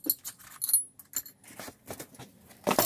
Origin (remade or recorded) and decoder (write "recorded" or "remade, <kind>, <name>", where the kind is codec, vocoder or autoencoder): recorded